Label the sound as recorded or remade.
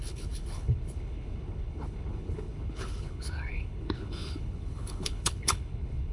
remade